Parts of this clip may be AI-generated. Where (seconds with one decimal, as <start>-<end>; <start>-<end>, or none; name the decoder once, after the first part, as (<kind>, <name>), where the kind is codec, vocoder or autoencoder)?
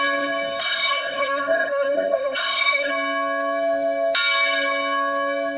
0.6-2.9 (codec, SNAC)